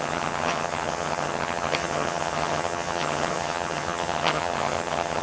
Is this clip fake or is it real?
fake